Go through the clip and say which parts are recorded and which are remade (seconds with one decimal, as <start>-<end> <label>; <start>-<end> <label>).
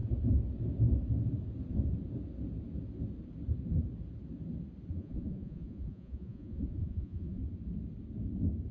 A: 0.0-4.9 recorded; 4.9-7.4 remade; 7.4-8.7 recorded